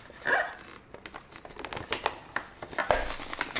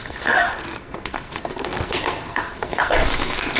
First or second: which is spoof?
second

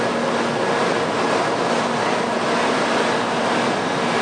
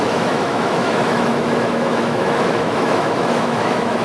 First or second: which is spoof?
second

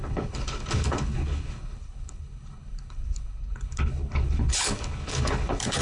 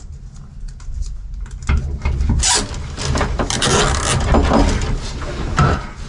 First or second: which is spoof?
first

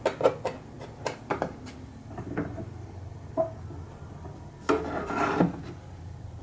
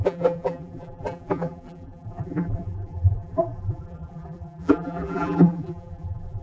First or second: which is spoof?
second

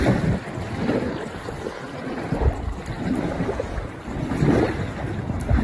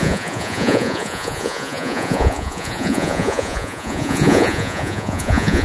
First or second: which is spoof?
second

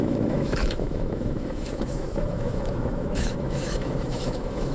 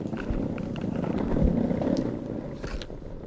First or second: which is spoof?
first